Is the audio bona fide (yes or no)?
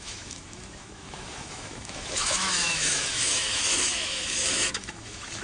no